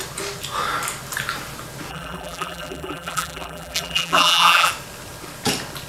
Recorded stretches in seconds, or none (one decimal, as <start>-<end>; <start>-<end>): 0.0-1.9; 4.7-5.9